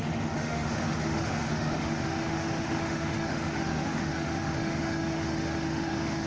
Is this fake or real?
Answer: fake